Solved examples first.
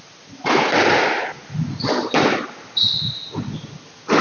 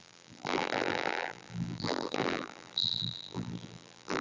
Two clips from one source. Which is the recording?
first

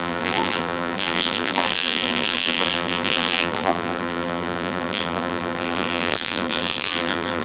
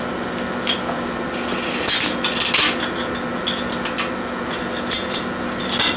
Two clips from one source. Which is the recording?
second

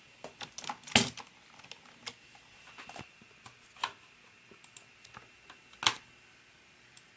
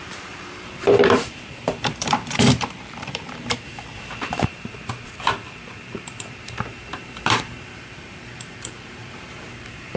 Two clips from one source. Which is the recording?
first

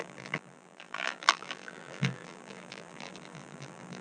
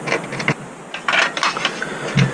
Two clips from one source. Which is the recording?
second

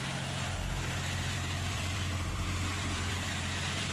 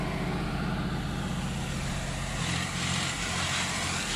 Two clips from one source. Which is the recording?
second